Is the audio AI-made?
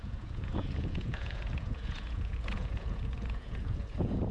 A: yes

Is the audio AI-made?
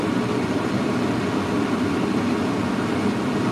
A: no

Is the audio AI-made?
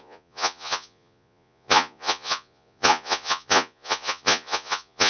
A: yes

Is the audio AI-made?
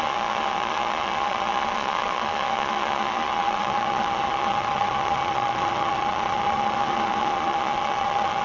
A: yes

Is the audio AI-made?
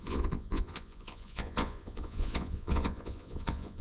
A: yes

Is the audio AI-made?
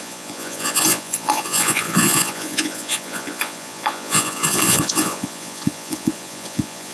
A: yes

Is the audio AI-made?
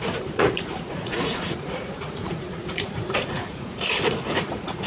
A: yes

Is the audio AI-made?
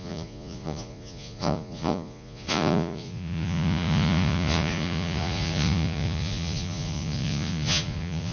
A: yes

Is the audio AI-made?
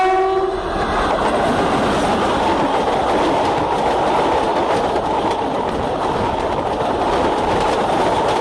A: no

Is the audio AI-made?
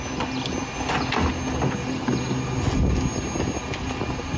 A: no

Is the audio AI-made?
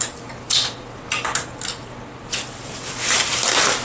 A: no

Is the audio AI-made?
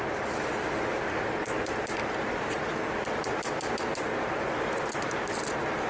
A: no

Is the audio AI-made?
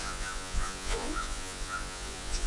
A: yes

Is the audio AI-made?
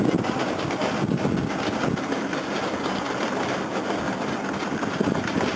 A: no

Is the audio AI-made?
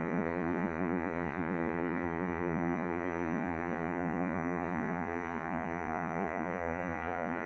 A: yes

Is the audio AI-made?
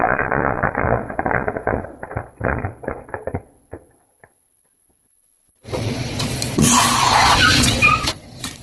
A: yes